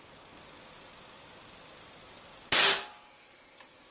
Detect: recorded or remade recorded